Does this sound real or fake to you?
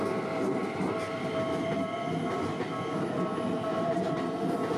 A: real